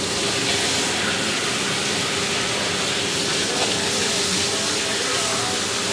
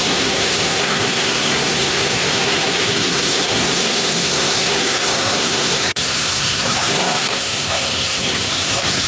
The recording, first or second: first